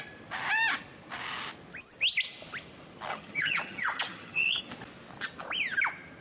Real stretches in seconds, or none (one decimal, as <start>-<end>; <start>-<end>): 0.0-3.1; 4.6-6.2